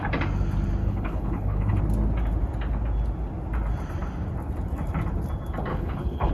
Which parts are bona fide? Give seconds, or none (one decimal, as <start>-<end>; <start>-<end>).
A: 0.0-0.8; 1.8-5.7

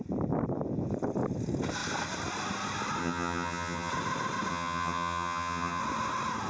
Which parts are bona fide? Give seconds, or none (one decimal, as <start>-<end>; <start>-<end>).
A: 0.0-3.0; 3.9-4.5; 5.8-6.5

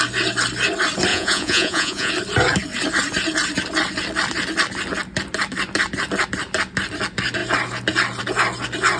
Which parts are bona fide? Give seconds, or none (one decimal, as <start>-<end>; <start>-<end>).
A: 0.0-1.1; 2.1-9.0

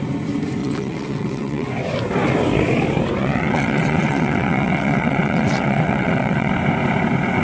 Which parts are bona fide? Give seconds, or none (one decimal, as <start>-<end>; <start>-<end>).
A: 0.0-0.6; 1.7-3.2; 6.5-7.4

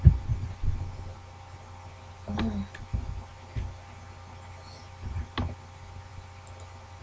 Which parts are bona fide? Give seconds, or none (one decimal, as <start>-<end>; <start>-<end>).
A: 0.0-7.0

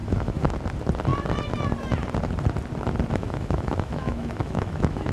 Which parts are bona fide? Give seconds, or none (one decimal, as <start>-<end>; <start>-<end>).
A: 0.5-3.2

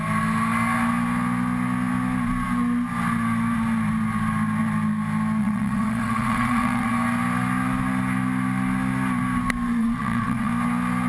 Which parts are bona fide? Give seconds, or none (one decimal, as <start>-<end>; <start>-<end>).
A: 0.0-5.4; 6.9-9.8; 10.5-11.1

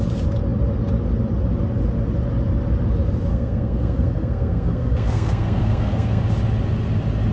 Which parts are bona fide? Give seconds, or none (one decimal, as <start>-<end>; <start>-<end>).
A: 0.0-3.3; 6.2-7.3